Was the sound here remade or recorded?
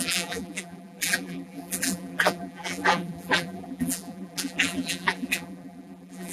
remade